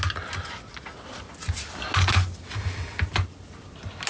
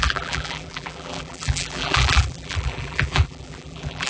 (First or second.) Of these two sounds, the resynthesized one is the second